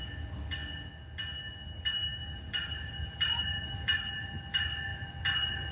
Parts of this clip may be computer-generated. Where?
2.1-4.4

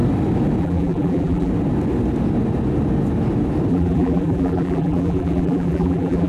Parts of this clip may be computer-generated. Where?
0.6-1.5; 3.7-6.3

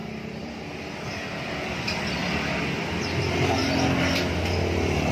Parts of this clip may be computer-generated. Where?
0.0-0.5; 2.2-2.7; 3.6-4.4

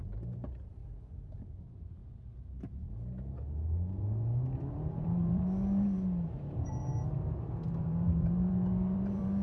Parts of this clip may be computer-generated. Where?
0.0-0.8; 1.3-2.0; 4.7-9.4